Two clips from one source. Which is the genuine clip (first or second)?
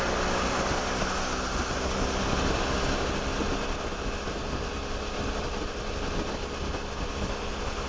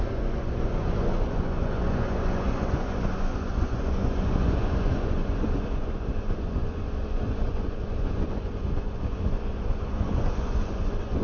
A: first